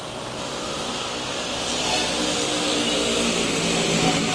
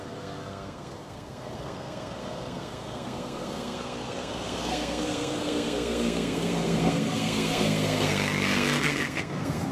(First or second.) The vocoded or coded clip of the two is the second